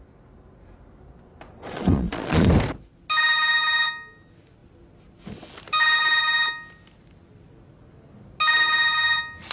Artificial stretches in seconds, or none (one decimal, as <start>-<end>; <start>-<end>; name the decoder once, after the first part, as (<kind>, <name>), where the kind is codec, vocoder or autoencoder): 1.5-2.5 (vocoder, Vocos)